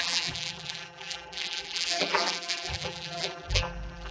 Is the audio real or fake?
fake